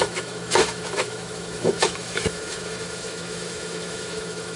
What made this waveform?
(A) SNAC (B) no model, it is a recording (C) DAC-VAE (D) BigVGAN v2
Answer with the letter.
C